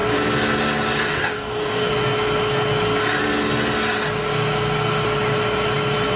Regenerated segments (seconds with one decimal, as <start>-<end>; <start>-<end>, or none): 1.1-1.9